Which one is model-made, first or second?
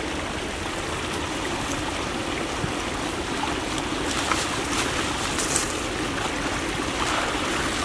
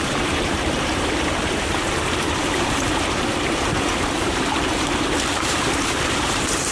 second